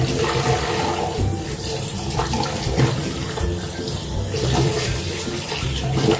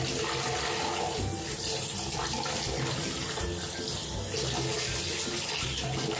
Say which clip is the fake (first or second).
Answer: first